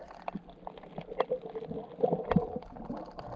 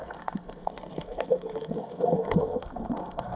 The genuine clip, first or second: first